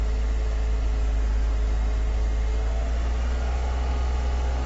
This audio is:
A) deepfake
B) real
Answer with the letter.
B